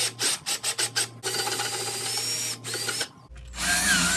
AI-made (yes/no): no